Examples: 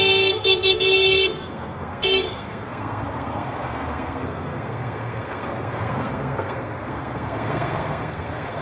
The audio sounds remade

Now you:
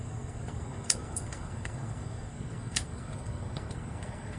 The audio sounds remade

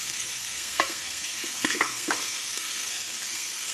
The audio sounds remade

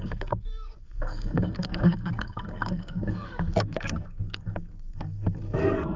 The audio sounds remade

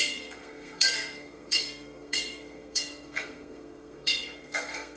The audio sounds remade